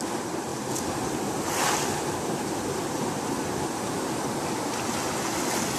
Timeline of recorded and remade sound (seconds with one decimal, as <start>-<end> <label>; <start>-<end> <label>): 0.0-5.8 recorded